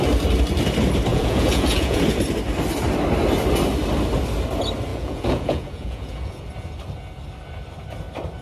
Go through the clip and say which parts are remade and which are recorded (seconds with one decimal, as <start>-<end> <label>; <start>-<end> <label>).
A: 0.0-1.1 recorded; 1.1-2.0 remade; 2.0-4.9 recorded; 4.9-6.4 remade; 6.4-8.4 recorded